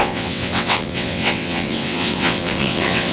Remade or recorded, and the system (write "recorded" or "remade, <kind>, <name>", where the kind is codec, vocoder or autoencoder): remade, vocoder, WaveNeXt